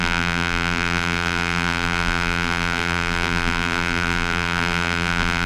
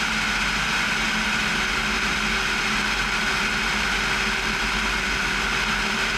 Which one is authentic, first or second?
second